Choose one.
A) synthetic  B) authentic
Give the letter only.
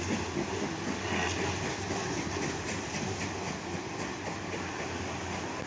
B